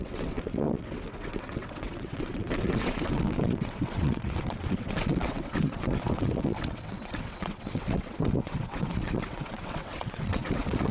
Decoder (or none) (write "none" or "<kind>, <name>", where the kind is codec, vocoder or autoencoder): vocoder, WaveNeXt